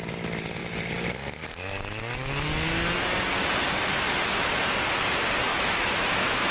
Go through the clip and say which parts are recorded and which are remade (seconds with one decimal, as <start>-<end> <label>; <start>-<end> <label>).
0.0-5.5 recorded; 5.5-6.5 remade